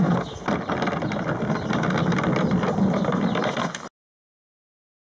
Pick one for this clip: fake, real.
real